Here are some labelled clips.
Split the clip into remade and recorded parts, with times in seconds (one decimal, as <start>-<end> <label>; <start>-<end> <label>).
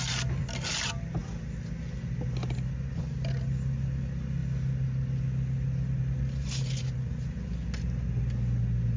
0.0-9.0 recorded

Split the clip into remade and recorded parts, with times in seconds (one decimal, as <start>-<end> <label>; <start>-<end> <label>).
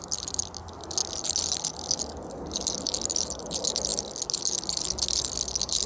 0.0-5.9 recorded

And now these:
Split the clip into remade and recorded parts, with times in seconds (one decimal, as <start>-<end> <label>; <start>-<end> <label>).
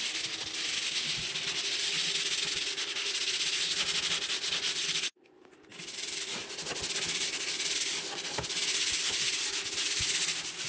0.0-5.7 recorded; 5.7-6.5 remade; 6.5-10.7 recorded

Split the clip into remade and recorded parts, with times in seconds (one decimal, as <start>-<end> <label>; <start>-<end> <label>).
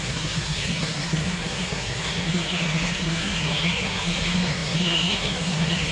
0.0-5.9 remade